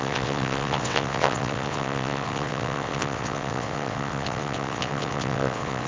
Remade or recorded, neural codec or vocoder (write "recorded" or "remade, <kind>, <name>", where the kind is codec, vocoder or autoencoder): remade, vocoder, WaveNeXt